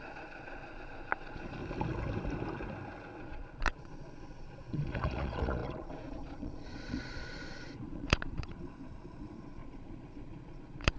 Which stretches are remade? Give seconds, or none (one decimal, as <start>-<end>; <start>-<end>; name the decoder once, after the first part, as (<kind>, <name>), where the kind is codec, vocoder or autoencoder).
0.0-1.6 (vocoder, Vocos); 3.2-11.0